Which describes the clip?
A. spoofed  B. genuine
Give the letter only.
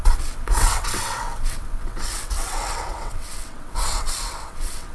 A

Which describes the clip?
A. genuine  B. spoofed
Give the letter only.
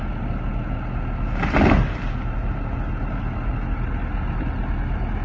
A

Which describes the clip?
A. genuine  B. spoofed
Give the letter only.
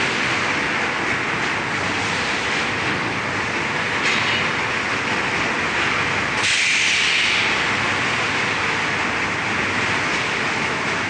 A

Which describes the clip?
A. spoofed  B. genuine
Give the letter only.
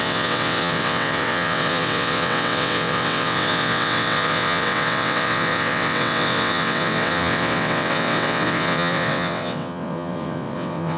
A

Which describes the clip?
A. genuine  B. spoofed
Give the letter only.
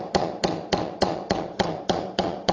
B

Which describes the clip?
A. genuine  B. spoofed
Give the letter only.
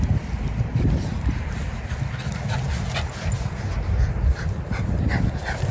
A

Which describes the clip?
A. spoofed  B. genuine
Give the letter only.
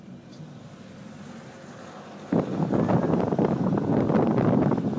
B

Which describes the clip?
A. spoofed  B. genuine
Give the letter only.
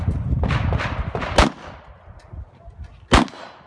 B